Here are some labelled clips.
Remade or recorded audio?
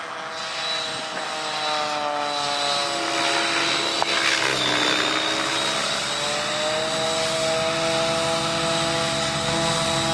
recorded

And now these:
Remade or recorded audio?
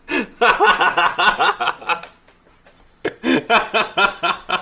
recorded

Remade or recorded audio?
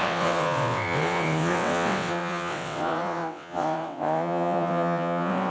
remade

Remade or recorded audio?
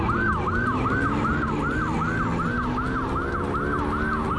recorded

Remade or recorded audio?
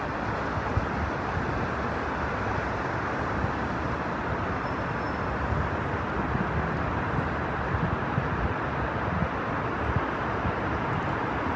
recorded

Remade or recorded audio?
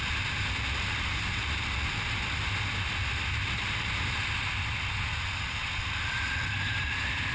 recorded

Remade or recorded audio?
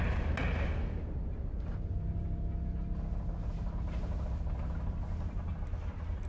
recorded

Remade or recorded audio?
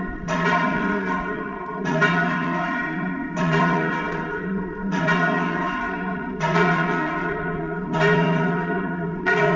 remade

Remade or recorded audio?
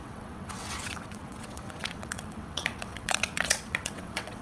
remade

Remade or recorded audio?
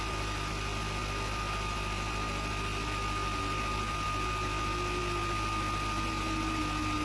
recorded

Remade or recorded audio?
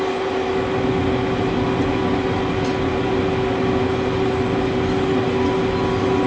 recorded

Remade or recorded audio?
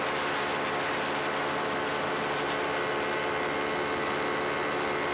recorded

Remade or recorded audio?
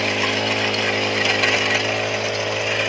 recorded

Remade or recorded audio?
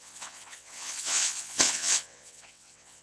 remade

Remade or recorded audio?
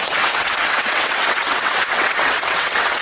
remade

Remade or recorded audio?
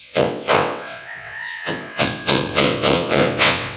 remade